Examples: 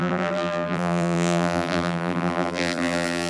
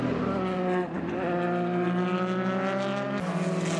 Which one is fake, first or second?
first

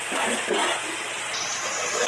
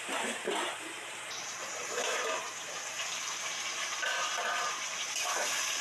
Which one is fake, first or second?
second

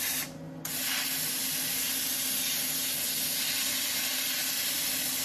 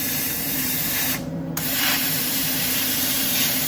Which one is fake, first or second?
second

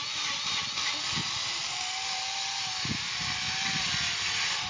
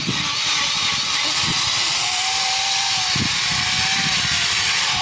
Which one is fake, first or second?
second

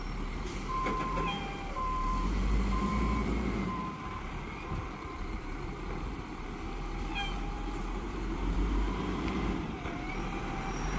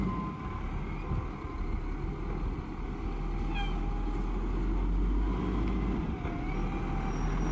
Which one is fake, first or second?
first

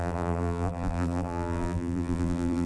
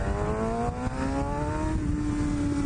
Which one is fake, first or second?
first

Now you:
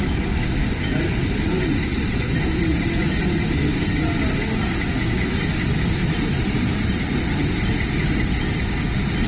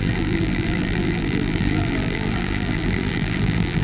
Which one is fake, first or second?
second